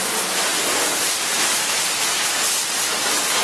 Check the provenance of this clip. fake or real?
real